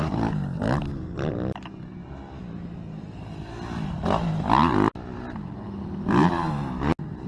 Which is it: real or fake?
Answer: real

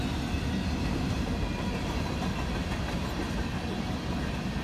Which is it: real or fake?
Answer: real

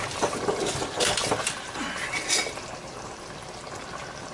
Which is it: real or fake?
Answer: fake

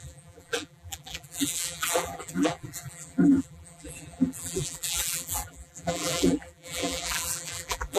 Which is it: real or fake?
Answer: fake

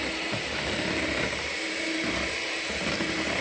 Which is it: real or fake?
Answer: fake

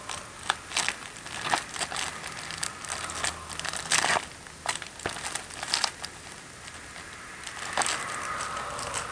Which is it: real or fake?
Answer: real